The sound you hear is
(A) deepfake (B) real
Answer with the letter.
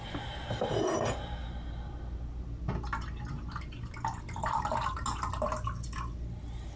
B